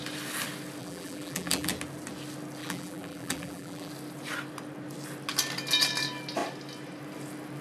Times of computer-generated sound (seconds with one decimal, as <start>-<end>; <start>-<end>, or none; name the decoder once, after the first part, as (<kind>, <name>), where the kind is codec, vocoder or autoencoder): 0.8-1.7 (vocoder, BigVGAN v2); 2.6-3.9